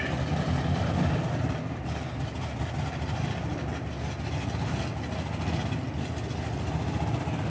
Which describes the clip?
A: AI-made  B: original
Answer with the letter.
B